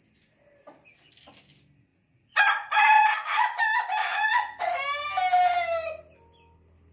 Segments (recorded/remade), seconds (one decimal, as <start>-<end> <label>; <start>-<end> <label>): 0.0-1.9 recorded; 1.9-3.6 remade; 3.6-4.0 recorded; 4.0-4.8 remade; 4.8-6.9 recorded